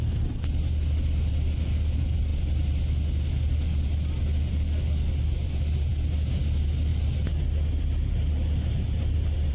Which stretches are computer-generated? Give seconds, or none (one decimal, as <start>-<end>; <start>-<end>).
none